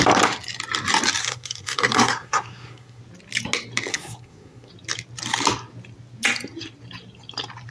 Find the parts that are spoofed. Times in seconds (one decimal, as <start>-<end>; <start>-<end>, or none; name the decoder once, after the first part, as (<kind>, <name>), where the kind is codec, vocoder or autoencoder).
1.2-3.0 (codec, SNAC); 3.9-4.7

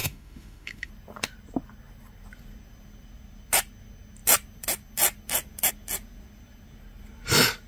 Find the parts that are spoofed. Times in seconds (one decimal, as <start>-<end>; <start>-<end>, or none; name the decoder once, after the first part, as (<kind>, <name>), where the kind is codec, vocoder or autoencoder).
0.0-0.9 (autoencoder, DAC-VAE)

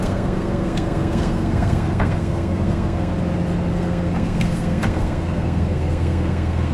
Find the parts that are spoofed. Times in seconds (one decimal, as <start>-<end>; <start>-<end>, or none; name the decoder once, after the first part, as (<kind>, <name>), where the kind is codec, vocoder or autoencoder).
0.0-3.1 (codec, SNAC); 3.7-6.7

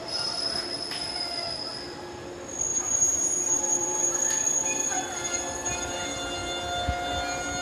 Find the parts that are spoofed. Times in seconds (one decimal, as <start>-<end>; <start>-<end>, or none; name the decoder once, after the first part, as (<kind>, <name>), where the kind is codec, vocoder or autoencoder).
2.7-4.2 (vocoder, BigVGAN v2)

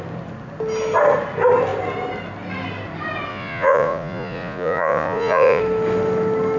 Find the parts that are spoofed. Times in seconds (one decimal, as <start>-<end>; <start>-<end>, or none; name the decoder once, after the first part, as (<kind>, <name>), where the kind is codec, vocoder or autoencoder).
3.3-5.6 (vocoder, Vocos)